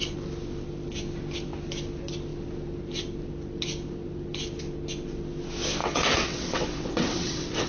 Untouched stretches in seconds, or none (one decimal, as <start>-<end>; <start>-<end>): 0.0-5.8